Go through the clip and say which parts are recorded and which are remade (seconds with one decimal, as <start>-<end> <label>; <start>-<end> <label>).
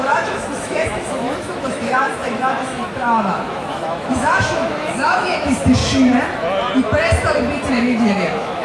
0.0-5.8 remade; 5.8-7.7 recorded; 7.7-8.6 remade